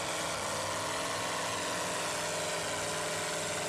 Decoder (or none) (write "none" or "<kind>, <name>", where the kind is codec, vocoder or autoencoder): none